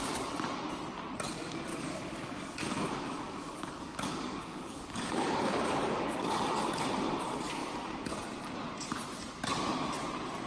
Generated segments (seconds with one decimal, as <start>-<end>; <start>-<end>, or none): 1.7-6.3